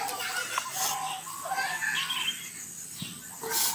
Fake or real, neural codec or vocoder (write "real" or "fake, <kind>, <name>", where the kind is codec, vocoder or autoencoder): real